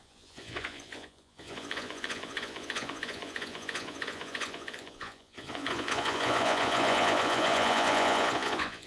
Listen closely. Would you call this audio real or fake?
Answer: fake